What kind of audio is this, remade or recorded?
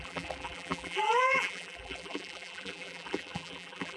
remade